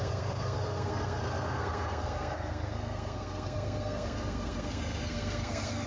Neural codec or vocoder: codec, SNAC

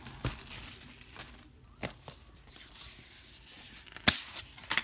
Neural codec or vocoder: none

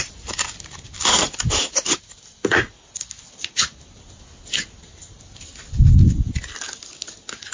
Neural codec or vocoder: none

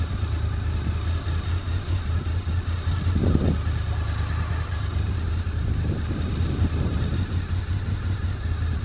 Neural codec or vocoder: none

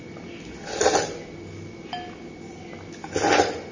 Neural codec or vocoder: none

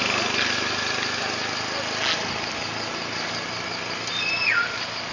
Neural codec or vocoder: none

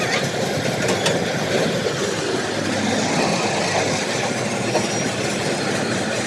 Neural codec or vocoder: none